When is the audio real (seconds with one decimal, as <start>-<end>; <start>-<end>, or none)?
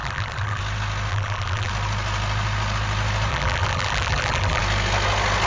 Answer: 0.6-1.1; 1.7-3.3; 4.6-5.5